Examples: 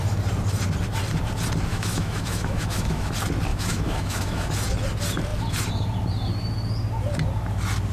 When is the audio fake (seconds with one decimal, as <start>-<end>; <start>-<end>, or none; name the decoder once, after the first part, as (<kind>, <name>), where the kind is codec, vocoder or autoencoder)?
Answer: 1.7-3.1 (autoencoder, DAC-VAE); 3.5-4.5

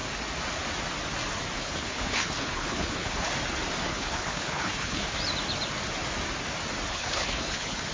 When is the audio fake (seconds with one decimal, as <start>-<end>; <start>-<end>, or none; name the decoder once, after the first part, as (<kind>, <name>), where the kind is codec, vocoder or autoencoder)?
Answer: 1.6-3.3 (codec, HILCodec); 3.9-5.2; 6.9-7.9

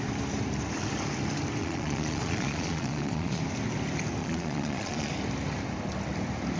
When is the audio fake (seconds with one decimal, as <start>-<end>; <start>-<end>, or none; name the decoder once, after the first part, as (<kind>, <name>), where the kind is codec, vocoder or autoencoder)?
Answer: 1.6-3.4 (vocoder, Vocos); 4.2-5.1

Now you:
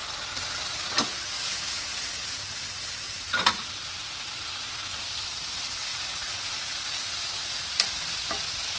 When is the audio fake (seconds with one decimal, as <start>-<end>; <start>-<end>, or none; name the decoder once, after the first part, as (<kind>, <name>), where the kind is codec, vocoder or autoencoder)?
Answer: 5.9-6.5 (vocoder, Vocos)